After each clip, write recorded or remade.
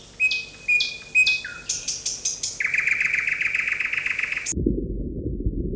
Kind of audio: recorded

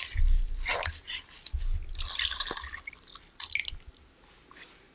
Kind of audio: recorded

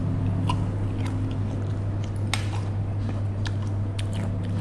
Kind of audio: recorded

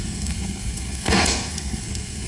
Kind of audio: remade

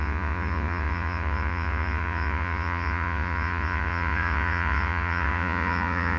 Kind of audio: remade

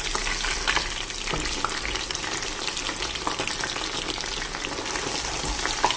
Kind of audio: recorded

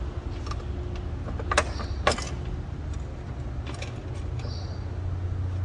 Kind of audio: recorded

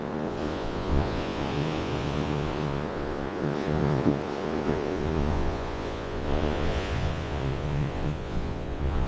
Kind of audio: remade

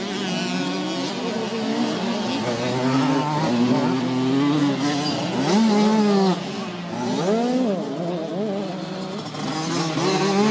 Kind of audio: recorded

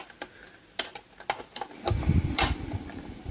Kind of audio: recorded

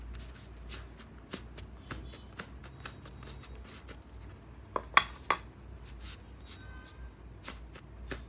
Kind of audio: recorded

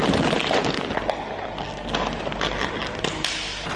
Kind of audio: recorded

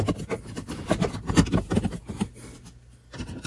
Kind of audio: recorded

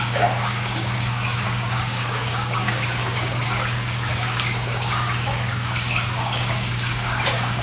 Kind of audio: remade